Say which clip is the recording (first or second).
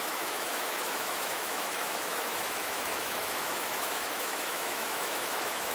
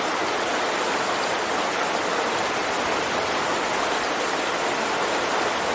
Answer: second